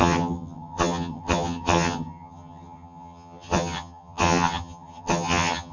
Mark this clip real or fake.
fake